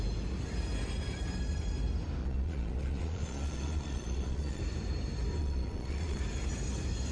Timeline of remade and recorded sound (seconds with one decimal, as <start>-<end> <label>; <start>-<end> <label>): 0.0-2.2 recorded; 2.2-4.6 remade; 4.6-5.4 recorded; 5.4-6.2 remade; 6.2-7.1 recorded